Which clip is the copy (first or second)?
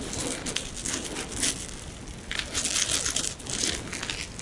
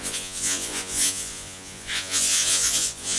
second